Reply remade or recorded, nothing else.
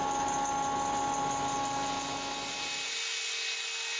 recorded